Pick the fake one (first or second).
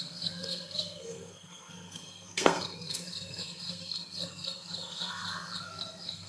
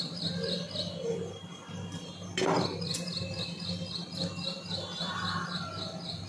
first